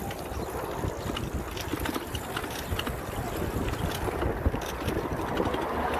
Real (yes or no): yes